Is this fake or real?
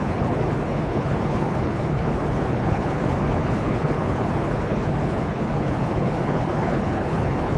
fake